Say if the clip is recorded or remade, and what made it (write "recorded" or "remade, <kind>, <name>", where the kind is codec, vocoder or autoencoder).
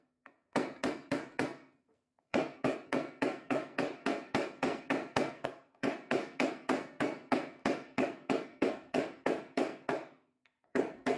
remade, codec, SNAC